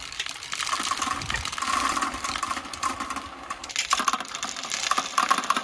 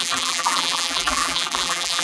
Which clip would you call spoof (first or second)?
second